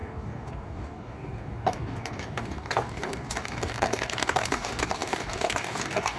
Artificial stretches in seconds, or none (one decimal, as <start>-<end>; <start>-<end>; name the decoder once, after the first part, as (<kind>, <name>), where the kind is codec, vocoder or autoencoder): 0.0-6.2 (codec, DAC)